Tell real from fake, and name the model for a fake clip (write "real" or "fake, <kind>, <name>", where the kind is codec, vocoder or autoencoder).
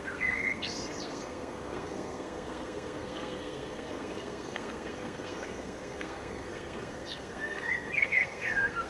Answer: fake, codec, SNAC